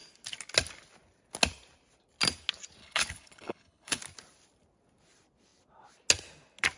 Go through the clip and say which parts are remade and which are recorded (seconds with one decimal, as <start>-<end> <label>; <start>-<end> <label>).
0.0-2.8 recorded; 2.8-4.0 remade; 4.0-6.8 recorded